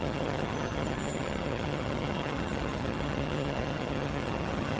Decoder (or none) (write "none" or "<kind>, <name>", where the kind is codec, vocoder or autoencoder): vocoder, HiFi-GAN